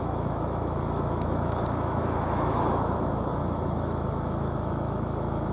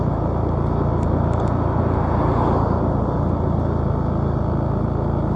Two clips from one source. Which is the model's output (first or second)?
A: first